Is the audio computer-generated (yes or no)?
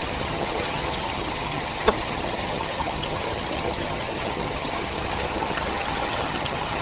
yes